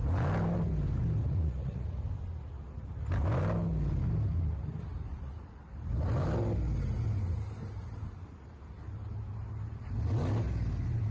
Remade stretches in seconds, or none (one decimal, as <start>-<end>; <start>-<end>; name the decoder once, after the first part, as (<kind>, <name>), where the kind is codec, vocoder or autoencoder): 1.2-2.0 (vocoder, Vocos); 5.1-5.6